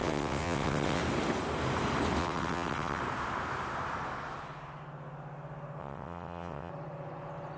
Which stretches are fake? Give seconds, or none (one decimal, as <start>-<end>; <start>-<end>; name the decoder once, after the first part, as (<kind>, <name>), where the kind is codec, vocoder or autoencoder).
0.0-1.0 (vocoder, WaveNeXt); 2.2-3.0; 5.8-6.7